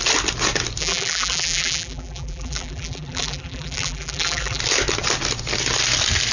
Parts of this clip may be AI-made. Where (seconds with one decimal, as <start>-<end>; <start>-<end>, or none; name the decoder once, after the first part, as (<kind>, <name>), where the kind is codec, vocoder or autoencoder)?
0.8-4.6 (vocoder, BigVGAN v2)